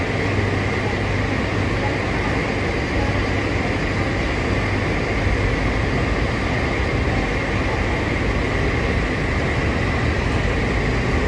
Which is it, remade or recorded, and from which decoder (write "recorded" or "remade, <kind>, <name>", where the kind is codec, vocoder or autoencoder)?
recorded